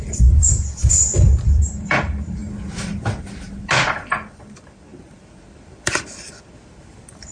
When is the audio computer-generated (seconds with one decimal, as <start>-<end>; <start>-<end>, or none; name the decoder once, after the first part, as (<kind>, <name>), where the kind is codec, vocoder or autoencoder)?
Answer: 0.0-2.4 (vocoder, BigVGAN v2); 3.9-7.3